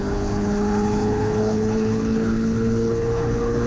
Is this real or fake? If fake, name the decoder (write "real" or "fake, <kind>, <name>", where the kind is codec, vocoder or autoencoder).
fake, codec, HILCodec